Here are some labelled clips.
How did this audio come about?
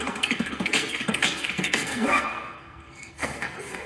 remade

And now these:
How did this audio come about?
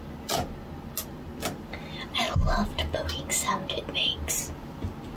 recorded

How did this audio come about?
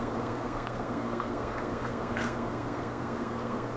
remade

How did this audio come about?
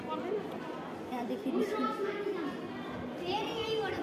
recorded